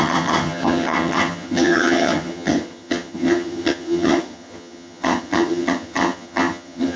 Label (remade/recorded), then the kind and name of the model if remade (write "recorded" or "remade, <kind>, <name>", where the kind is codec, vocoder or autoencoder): remade, vocoder, HiFi-GAN